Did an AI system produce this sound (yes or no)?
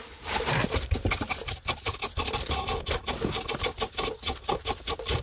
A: no